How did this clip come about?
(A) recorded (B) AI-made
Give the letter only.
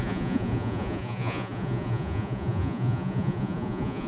B